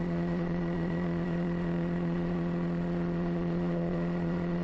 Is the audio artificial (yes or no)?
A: yes